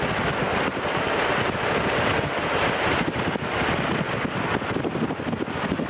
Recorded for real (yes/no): yes